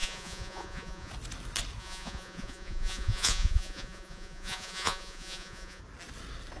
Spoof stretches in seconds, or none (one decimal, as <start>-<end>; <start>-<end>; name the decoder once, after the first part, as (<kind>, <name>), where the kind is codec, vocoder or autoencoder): 0.0-1.1 (vocoder, Vocos); 1.8-5.8